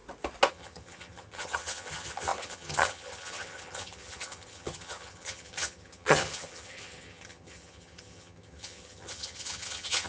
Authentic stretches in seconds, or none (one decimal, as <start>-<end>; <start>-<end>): 0.0-0.5